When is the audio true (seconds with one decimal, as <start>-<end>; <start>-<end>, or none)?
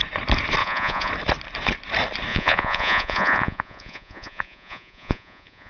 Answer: 0.0-0.6; 1.1-2.3